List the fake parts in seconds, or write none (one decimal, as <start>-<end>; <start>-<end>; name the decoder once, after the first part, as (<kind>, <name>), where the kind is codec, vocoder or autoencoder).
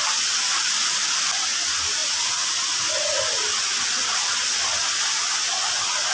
none